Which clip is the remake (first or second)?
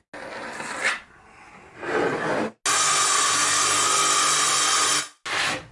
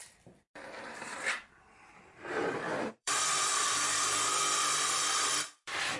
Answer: second